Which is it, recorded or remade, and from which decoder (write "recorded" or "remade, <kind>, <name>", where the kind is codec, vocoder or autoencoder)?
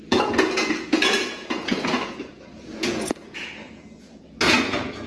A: remade, vocoder, Vocos